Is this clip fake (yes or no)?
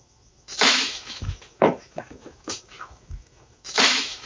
yes